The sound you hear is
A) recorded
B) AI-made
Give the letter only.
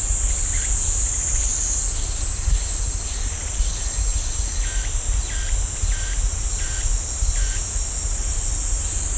A